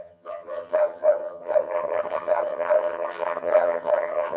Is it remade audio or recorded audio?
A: remade